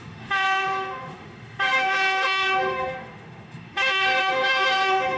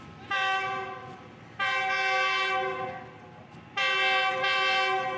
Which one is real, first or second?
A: second